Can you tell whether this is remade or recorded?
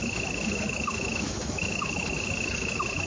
remade